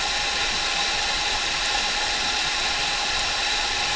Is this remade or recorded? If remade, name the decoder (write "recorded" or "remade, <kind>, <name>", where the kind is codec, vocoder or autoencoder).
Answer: recorded